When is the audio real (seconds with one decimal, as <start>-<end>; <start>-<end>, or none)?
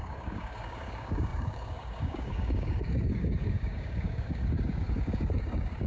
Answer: none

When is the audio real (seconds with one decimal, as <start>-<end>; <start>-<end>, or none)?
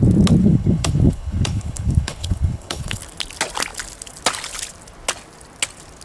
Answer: 0.0-0.4; 3.0-6.0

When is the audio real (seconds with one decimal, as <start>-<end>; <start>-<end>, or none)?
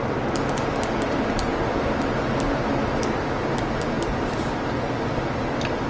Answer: 0.0-5.9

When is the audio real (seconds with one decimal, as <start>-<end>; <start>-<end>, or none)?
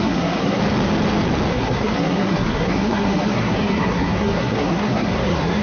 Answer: 0.6-1.5